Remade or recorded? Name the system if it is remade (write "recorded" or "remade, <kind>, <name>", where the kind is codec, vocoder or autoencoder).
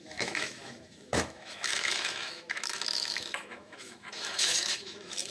remade, autoencoder, DAC-VAE